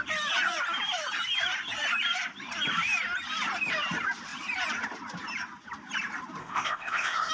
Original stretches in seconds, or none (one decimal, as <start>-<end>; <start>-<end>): 0.0-6.4